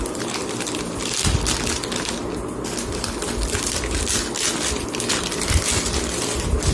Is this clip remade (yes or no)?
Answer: no